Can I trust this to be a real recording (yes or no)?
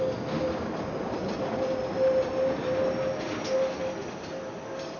yes